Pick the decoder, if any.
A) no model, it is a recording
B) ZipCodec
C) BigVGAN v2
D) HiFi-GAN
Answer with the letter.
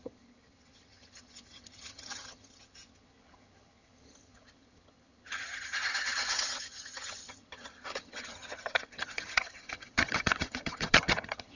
D